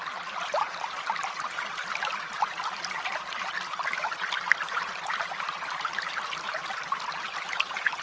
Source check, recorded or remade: recorded